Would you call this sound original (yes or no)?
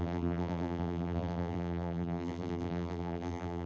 no